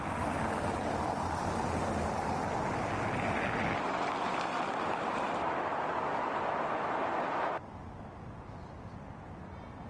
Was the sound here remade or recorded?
remade